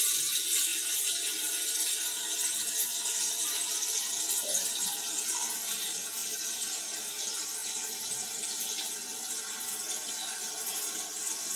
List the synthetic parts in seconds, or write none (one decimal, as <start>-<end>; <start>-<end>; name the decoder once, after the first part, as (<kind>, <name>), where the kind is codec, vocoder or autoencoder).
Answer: none